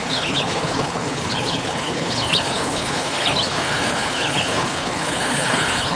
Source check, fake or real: fake